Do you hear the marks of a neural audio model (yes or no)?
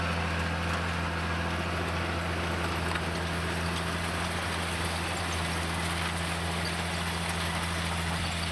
no